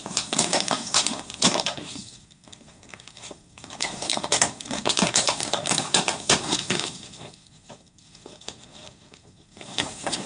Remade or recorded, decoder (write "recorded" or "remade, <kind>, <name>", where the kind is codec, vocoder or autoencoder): remade, codec, SNAC